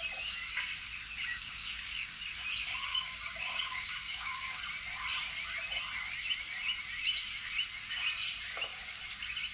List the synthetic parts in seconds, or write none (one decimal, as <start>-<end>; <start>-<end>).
1.3-2.2; 2.9-4.6